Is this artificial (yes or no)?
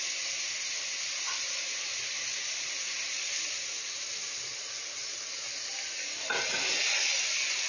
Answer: no